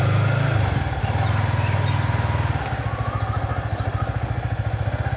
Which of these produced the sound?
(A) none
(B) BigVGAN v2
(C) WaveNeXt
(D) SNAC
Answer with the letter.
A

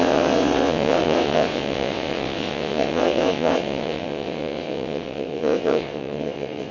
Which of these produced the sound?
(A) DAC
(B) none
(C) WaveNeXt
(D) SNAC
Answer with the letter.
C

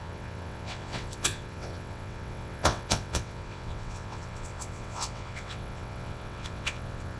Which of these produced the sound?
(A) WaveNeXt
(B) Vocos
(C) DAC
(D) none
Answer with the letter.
A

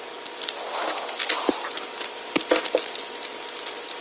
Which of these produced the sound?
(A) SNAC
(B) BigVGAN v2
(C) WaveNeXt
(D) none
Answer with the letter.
D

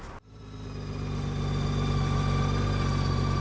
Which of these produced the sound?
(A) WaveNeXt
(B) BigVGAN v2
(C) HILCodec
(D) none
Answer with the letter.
D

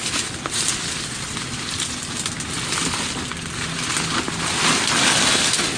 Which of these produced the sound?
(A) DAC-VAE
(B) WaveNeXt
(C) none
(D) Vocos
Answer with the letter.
C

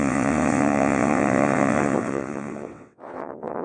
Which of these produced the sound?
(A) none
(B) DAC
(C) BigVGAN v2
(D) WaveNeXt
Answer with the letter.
D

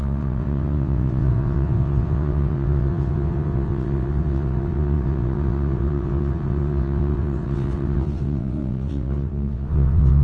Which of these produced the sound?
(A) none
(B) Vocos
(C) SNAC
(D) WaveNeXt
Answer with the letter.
D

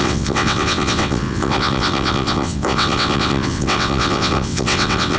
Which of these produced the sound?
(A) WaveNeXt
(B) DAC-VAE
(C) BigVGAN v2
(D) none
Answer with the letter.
A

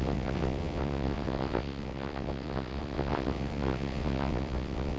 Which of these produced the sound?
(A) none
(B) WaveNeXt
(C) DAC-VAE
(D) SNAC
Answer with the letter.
B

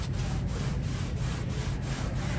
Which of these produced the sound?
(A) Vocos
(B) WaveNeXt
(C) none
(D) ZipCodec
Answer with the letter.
C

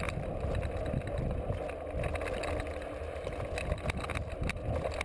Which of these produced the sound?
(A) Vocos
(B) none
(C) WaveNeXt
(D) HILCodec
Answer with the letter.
B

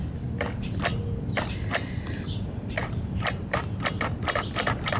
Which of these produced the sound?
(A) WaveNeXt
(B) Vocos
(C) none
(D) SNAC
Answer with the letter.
C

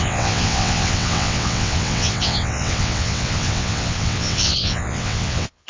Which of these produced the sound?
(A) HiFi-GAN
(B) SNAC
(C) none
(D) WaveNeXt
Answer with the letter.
D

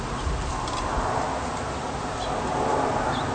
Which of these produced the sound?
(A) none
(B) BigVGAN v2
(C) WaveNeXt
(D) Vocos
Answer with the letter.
A